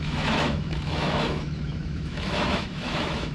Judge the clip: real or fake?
fake